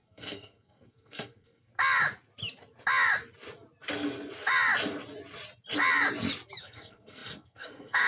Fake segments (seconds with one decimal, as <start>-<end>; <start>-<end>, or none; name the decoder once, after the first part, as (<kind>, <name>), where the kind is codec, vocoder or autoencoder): 0.0-1.7 (codec, SNAC); 6.6-8.1